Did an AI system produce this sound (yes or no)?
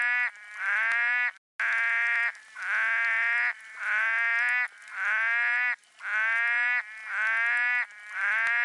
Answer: no